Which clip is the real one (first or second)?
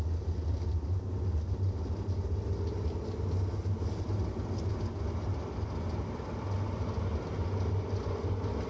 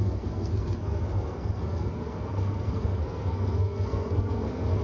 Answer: first